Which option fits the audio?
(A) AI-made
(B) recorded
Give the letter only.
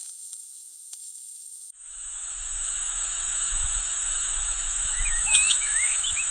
A